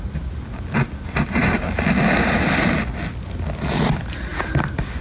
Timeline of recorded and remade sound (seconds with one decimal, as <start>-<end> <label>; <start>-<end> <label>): 0.0-5.0 recorded